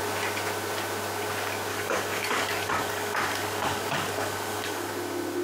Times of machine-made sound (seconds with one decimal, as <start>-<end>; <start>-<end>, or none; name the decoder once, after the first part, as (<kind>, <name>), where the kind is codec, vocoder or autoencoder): 1.7-4.9 (codec, DAC)